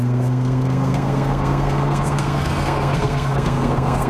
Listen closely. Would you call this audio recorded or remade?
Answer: remade